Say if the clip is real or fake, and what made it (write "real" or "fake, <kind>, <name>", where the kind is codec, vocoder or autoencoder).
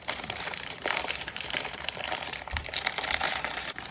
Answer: fake, vocoder, BigVGAN v2